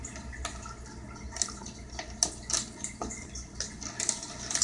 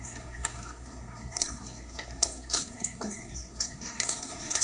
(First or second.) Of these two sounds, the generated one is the second